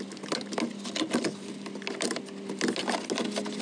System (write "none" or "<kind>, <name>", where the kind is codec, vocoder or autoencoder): none